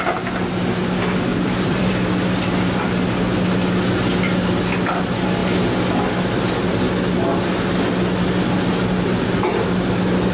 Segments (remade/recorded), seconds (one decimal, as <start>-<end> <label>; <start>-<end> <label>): 0.0-1.3 recorded; 1.3-1.9 remade; 1.9-10.3 recorded